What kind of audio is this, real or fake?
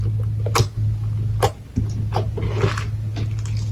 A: real